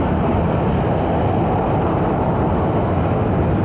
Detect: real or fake real